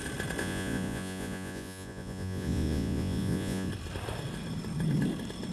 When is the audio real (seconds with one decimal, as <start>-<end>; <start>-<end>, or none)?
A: 0.0-0.4; 3.7-5.5